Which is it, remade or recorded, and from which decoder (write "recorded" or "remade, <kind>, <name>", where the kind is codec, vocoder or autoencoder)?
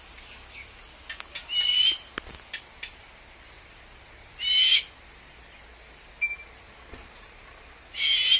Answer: recorded